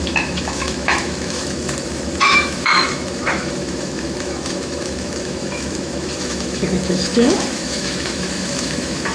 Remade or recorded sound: remade